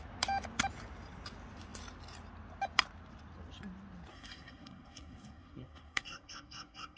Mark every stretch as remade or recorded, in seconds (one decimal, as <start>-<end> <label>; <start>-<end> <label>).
0.0-4.1 recorded; 4.1-7.0 remade